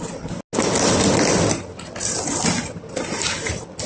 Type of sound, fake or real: real